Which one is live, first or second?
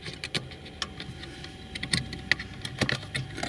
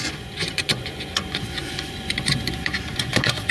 first